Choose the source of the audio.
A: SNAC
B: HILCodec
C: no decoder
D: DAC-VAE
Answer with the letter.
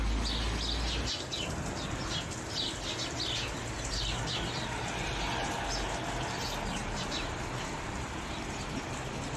C